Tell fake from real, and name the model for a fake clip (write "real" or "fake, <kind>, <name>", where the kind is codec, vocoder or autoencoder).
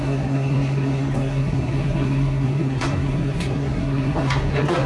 fake, codec, SNAC